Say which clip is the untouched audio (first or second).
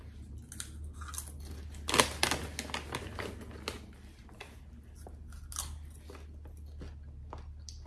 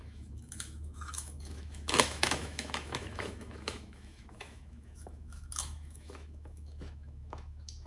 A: first